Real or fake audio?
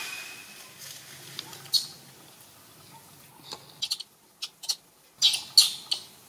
real